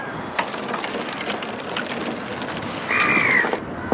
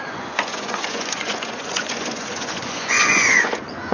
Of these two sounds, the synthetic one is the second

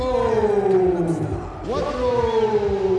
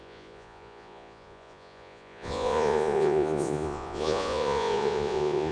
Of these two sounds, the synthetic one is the second